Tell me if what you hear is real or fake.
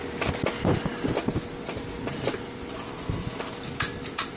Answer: real